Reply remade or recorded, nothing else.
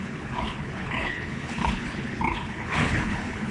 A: remade